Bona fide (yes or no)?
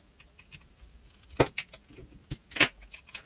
yes